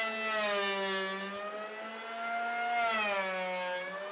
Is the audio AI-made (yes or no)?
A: no